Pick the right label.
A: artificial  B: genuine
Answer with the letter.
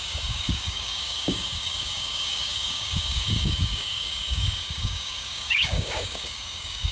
A